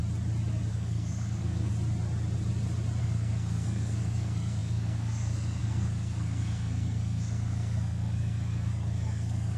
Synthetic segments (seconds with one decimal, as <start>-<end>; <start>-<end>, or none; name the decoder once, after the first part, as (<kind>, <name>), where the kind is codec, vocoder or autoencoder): 0.7-1.7 (codec, SNAC); 3.0-9.6